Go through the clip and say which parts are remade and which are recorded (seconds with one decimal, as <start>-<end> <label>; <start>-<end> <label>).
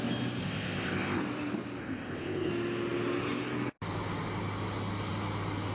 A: 0.0-0.4 recorded; 0.4-1.2 remade; 1.2-1.8 recorded; 1.8-2.5 remade; 2.5-5.7 recorded